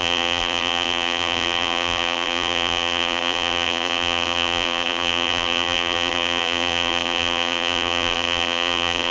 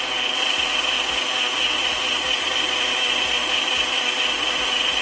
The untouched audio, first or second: second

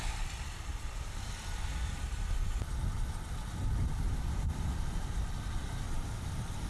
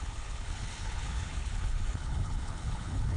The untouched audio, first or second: first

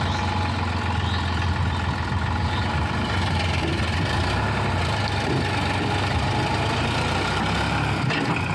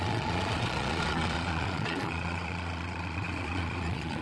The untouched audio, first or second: first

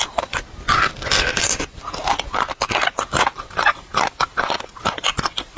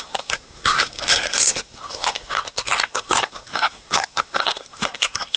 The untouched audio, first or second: first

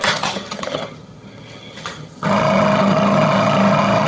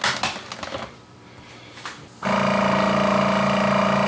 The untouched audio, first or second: second